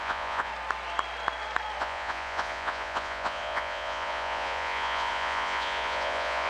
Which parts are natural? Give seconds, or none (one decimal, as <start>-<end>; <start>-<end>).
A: 0.5-1.8